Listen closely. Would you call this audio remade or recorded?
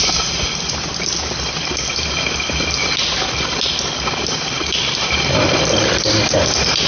recorded